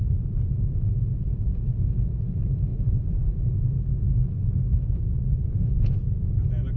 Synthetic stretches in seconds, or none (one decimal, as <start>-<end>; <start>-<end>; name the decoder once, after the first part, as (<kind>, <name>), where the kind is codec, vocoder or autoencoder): 4.7-5.5 (vocoder, Vocos)